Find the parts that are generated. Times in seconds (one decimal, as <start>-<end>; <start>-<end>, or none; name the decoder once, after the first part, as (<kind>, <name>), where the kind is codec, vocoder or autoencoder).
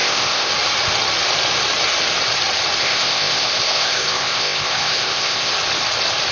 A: 0.0-0.5 (codec, ZipCodec); 2.8-5.5